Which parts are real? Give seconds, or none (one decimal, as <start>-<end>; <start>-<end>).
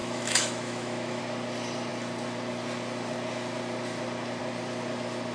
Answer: 1.2-5.3